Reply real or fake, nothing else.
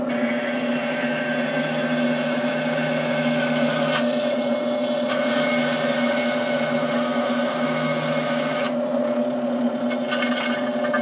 real